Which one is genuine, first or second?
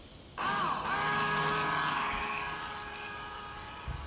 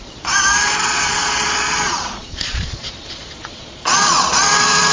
first